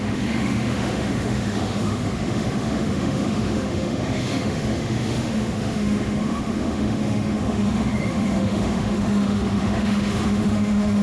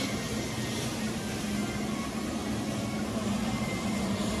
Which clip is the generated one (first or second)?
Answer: first